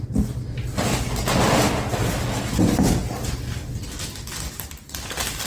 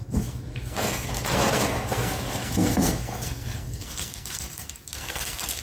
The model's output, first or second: second